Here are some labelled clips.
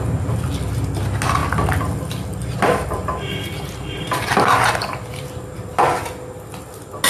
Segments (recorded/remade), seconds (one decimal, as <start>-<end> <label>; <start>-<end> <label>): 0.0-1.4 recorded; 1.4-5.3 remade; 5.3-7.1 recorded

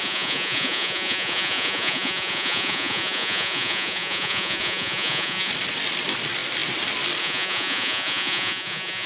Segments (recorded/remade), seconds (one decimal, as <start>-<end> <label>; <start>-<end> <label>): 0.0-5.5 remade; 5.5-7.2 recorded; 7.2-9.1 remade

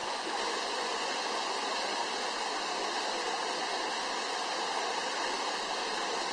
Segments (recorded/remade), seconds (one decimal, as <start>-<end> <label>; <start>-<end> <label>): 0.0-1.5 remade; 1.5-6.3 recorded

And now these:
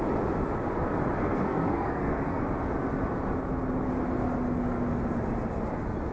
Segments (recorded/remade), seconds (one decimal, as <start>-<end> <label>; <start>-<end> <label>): 0.0-1.2 recorded; 1.2-2.4 remade; 2.4-6.1 recorded

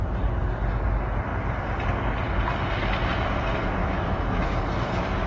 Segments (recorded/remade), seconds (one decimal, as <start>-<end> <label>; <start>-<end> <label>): 0.0-3.8 recorded; 3.8-4.6 remade; 4.6-5.3 recorded

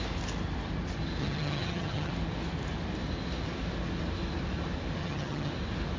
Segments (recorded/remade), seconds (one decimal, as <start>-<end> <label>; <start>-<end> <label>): 0.0-1.2 recorded; 1.2-2.1 remade; 2.1-5.0 recorded; 5.0-5.5 remade; 5.5-6.0 recorded

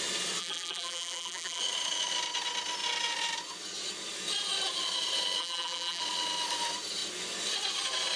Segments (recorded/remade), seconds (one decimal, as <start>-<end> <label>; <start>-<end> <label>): 0.0-0.4 recorded; 0.4-1.6 remade; 1.6-5.4 recorded; 5.4-6.0 remade; 6.0-8.2 recorded

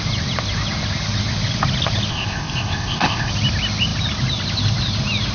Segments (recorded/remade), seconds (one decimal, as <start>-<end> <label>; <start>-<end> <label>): 0.0-2.1 recorded; 2.1-3.3 remade; 3.3-5.3 recorded